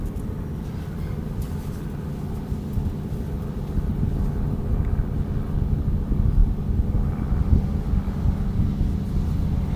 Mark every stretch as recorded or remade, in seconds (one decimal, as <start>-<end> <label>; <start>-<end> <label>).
0.0-9.8 recorded